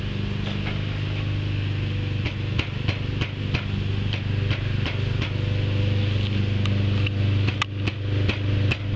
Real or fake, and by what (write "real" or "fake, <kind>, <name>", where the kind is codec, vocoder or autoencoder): real